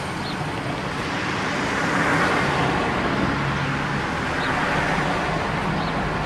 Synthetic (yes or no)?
no